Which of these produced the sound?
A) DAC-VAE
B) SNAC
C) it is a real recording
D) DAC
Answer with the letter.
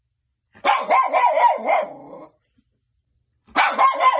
C